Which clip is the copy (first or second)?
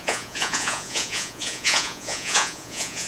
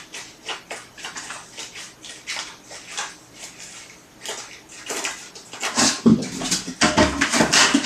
first